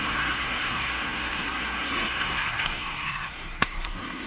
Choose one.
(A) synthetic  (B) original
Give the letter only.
A